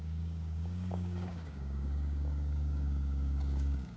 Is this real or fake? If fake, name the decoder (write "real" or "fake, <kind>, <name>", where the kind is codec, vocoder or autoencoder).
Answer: fake, codec, DAC